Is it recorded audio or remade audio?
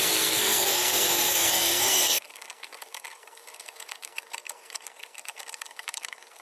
remade